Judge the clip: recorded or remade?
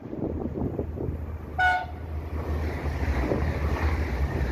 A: recorded